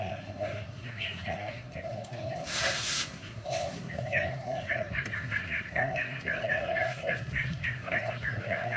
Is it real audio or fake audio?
fake